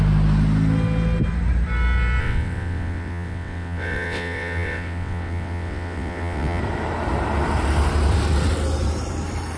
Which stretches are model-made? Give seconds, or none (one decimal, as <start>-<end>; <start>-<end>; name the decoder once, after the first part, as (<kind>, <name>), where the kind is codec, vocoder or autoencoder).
2.2-6.6 (vocoder, WaveNeXt)